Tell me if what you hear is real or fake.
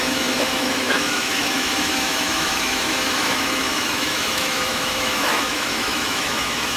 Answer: fake